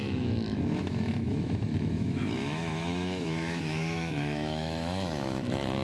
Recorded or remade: remade